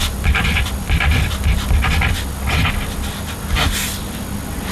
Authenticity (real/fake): real